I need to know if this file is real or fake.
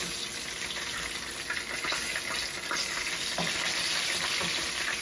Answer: real